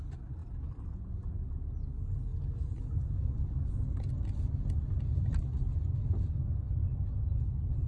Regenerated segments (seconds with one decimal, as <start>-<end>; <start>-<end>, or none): none